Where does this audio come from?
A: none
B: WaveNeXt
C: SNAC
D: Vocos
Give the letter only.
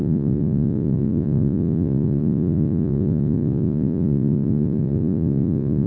D